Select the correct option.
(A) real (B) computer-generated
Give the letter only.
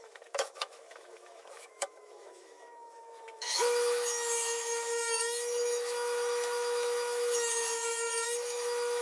B